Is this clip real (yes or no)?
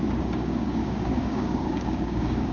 no